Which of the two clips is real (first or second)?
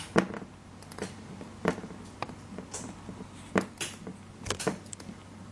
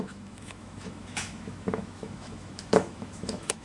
first